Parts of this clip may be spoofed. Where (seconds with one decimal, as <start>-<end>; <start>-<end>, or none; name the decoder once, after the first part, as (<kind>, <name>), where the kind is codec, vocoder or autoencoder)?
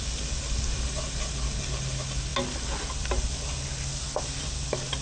none